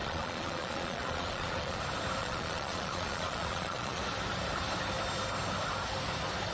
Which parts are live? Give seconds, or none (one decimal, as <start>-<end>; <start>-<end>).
1.8-2.2; 4.0-6.5